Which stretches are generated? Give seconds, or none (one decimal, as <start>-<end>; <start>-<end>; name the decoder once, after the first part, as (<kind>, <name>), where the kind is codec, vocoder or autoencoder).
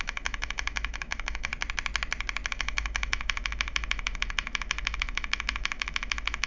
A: 0.0-1.5 (autoencoder, DAC-VAE); 2.5-6.5